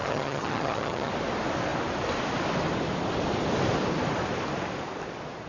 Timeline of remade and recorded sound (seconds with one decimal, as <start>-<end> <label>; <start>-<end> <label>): 0.0-1.1 remade; 1.1-5.5 recorded